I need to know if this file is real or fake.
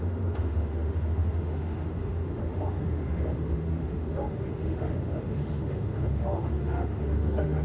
fake